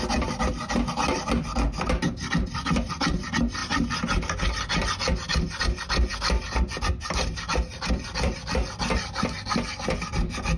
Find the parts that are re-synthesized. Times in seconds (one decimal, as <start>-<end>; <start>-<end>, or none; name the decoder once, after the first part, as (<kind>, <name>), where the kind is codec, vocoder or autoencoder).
none